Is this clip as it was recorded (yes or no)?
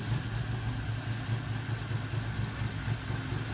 yes